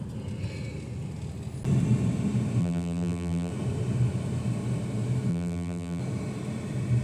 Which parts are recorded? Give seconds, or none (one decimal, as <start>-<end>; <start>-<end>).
0.0-2.6; 3.5-5.3; 6.0-7.0